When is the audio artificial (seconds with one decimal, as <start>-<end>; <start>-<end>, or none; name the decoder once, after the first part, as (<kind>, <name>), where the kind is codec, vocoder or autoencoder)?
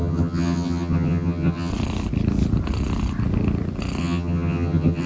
0.0-1.7 (vocoder, HiFi-GAN); 4.0-5.1